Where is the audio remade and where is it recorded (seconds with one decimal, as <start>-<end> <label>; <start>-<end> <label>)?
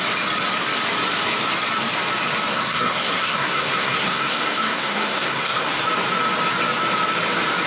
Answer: 0.0-2.5 recorded; 2.5-5.8 remade; 5.8-7.7 recorded